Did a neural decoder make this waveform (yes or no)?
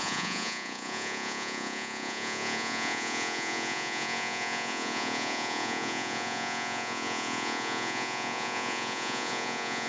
yes